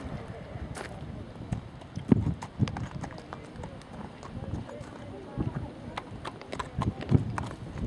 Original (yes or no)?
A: yes